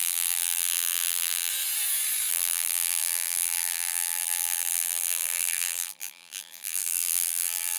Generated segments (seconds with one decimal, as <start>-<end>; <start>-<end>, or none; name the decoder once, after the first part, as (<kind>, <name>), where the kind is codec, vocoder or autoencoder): 0.0-1.5 (vocoder, BigVGAN v2); 2.3-7.8